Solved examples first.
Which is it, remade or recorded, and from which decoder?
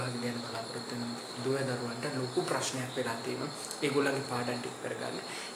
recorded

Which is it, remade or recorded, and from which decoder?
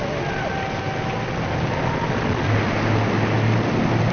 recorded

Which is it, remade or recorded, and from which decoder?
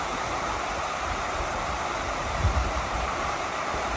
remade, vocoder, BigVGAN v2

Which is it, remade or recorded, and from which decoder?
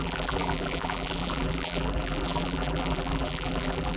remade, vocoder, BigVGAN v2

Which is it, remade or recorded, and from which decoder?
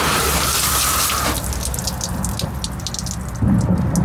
recorded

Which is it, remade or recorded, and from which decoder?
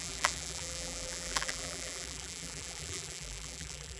remade, vocoder, BigVGAN v2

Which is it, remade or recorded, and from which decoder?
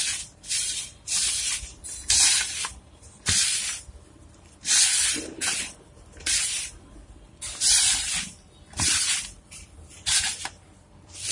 remade, vocoder, BigVGAN v2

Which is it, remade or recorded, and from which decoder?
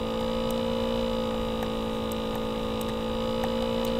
recorded